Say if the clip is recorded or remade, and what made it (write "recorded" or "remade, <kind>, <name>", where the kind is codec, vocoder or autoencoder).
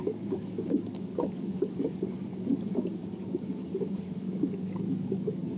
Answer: remade, codec, DAC